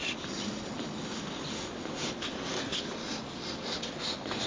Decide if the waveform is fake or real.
real